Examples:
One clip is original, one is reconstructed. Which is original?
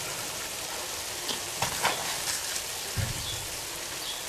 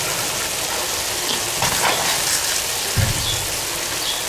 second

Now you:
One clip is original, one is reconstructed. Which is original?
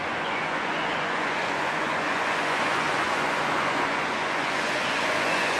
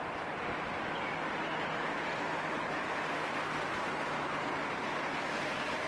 second